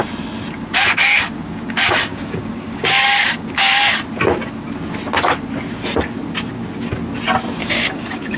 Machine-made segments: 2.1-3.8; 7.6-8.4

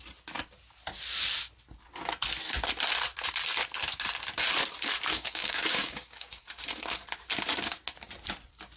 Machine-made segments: 5.1-6.4

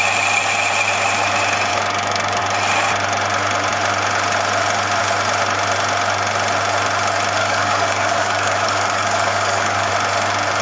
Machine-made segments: 1.7-2.4; 7.4-9.9

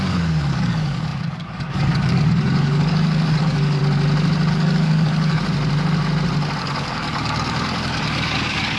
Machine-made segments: 0.0-3.8; 4.5-5.4; 6.6-8.8

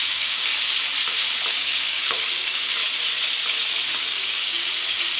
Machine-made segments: 0.0-0.5; 1.5-2.8; 4.0-5.2

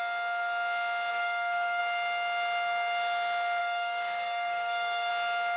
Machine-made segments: 1.1-1.8; 3.6-5.1

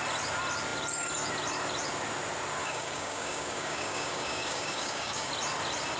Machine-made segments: 2.6-5.3